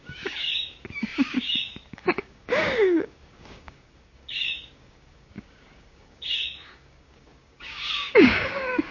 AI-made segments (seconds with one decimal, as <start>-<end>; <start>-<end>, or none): 0.0-8.9